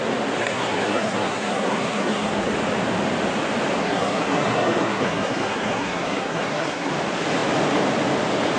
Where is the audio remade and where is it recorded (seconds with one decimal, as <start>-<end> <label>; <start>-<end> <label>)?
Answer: 0.0-0.4 recorded; 0.4-2.5 remade; 2.5-3.8 recorded; 3.8-6.9 remade; 6.9-8.6 recorded